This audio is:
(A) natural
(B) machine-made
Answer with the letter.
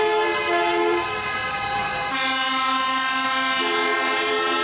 A